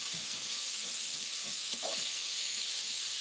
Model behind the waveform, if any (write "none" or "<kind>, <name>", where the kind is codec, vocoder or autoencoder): codec, SNAC